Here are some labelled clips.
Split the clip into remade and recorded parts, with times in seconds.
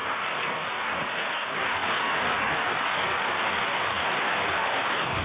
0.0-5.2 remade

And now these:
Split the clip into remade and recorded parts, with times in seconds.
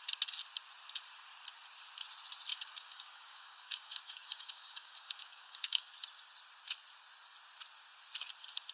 0.0-2.5 recorded; 2.5-5.9 remade; 5.9-8.7 recorded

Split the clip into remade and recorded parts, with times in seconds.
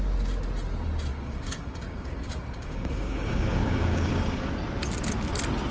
0.0-1.1 recorded; 1.1-4.5 remade; 4.5-5.7 recorded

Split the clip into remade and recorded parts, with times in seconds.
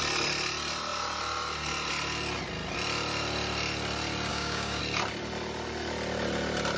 0.0-4.3 recorded; 4.3-4.8 remade; 4.8-6.8 recorded